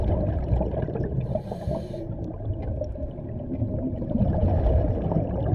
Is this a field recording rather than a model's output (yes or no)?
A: yes